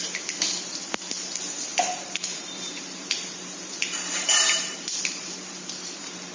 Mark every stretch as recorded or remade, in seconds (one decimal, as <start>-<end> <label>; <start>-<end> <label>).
0.0-1.7 recorded; 1.7-5.5 remade; 5.5-6.3 recorded